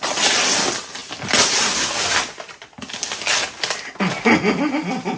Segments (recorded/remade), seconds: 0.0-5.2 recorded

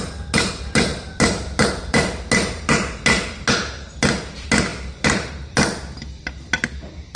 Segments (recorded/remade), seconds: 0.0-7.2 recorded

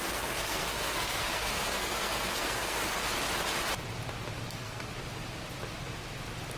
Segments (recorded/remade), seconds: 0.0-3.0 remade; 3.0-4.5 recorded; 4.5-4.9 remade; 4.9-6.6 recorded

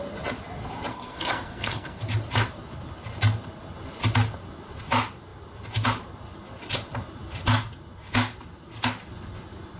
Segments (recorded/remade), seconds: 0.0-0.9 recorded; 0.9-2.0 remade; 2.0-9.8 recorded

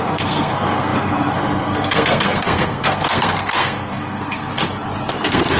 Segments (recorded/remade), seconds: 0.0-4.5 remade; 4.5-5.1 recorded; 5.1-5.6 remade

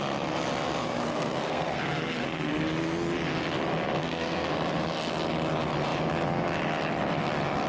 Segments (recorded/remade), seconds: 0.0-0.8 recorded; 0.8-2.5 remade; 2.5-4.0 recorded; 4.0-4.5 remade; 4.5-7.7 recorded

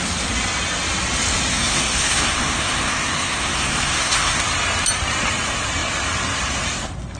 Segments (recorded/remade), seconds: 0.0-1.5 recorded; 1.5-4.4 remade; 4.4-7.2 recorded